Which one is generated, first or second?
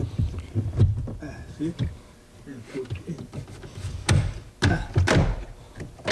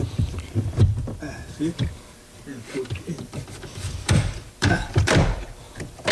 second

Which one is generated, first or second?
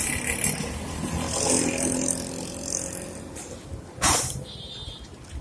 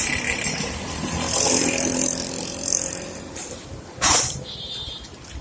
second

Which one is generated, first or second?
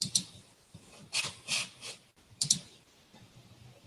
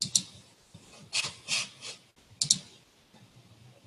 first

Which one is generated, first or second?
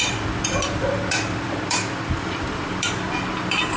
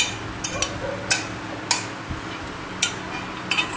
first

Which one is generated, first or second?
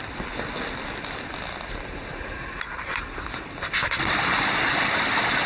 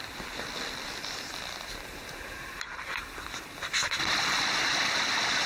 second